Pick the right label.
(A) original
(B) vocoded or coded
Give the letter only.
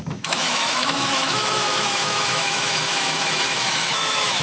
B